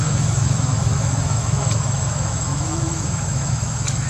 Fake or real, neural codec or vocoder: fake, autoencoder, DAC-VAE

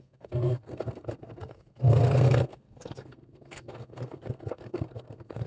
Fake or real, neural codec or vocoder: fake, codec, SNAC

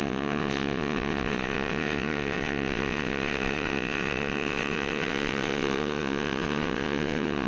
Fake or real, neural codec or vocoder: fake, vocoder, WaveNeXt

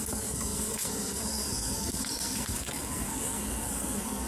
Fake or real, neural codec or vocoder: fake, codec, SNAC